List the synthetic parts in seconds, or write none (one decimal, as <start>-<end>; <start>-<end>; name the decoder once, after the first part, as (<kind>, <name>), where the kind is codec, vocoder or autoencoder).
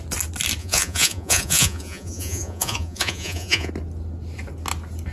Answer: 0.6-3.7 (vocoder, Vocos)